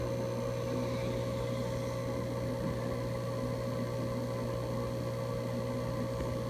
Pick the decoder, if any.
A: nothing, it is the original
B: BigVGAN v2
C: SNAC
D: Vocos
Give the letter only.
A